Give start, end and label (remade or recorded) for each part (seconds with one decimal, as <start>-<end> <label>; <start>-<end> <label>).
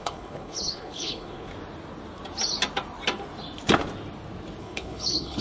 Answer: 0.0-1.5 remade; 1.5-4.6 recorded; 4.6-5.4 remade